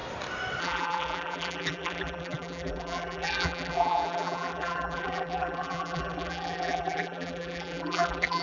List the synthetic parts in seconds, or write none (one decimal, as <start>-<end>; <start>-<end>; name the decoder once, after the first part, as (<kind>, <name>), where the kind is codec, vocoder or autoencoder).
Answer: 0.6-8.4 (vocoder, BigVGAN v2)